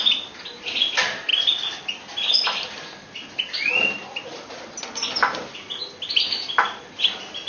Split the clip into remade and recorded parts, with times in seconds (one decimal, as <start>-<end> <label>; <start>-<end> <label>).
0.0-7.5 recorded